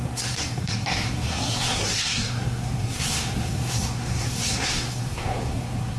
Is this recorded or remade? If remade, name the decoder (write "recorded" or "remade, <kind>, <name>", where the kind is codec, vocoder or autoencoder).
remade, codec, SNAC